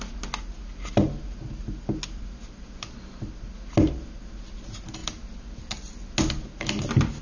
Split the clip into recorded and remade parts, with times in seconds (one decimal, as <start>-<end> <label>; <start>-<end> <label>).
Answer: 0.0-7.2 recorded